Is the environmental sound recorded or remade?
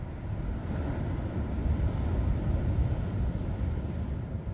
recorded